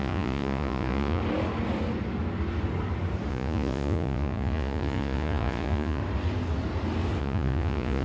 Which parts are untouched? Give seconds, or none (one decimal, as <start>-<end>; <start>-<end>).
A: 1.2-3.3; 6.0-7.2